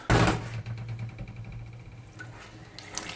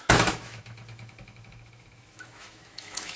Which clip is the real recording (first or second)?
first